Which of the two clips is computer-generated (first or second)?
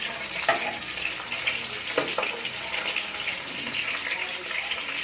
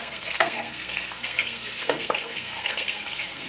second